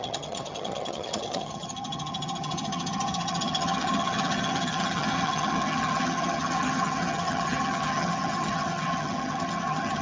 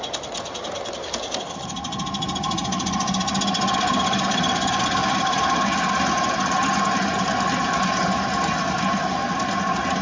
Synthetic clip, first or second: first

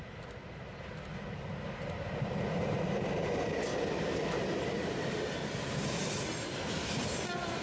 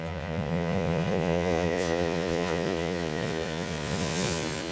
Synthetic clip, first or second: second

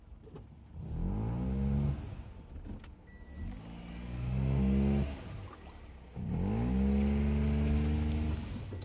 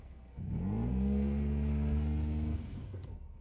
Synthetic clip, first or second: second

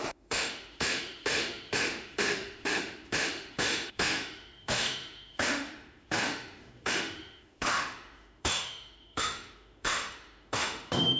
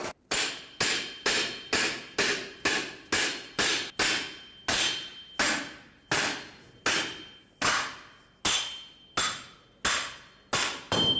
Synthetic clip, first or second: first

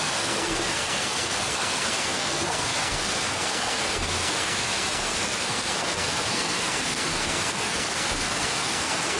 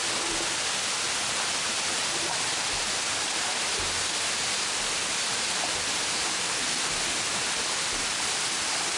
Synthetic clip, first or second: first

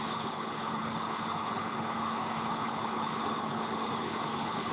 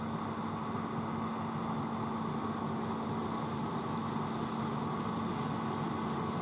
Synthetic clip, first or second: first